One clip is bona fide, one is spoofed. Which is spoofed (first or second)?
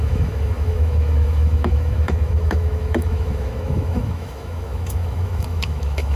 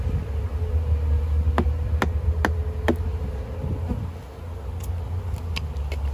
first